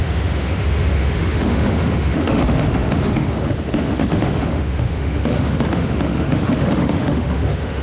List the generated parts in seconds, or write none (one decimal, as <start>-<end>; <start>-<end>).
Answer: 0.0-7.8